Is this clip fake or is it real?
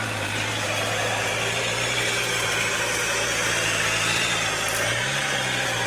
fake